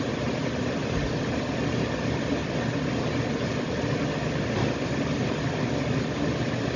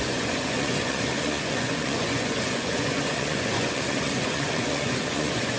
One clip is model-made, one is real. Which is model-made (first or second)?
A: second